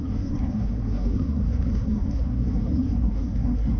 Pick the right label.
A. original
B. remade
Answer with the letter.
B